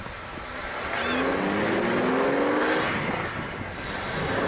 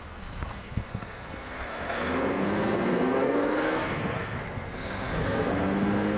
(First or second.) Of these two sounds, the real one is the first